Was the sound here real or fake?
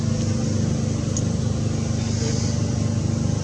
real